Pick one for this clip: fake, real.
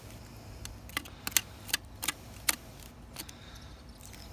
real